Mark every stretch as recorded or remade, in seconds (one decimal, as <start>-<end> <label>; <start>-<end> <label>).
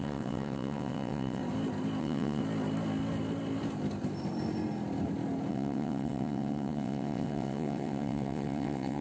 0.0-1.4 remade; 1.4-2.0 recorded; 2.0-2.4 remade; 2.4-5.5 recorded; 5.5-9.0 remade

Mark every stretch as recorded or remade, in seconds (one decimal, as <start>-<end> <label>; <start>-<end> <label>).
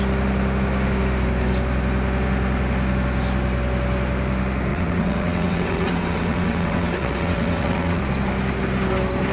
0.0-4.7 recorded; 4.7-8.0 remade; 8.0-9.3 recorded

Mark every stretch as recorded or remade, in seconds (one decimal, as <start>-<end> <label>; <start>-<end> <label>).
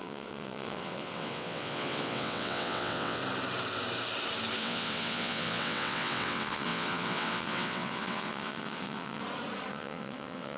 0.0-3.2 remade; 3.2-4.6 recorded; 4.6-9.2 remade; 9.2-9.7 recorded; 9.7-10.6 remade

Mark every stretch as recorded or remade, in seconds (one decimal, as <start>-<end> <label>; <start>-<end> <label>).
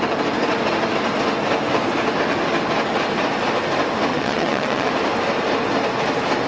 0.0-4.1 recorded; 4.1-4.9 remade; 4.9-6.5 recorded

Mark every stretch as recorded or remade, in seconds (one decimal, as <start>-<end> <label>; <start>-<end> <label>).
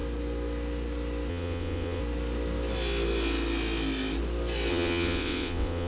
0.0-1.3 recorded; 1.3-2.0 remade; 2.0-4.7 recorded; 4.7-5.9 remade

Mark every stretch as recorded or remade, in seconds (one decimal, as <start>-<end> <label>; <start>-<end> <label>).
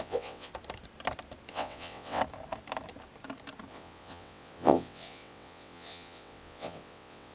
0.0-0.5 remade; 0.5-1.5 recorded; 1.5-2.2 remade; 2.2-3.7 recorded; 3.7-7.3 remade